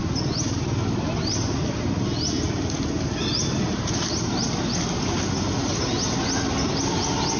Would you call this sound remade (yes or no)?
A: no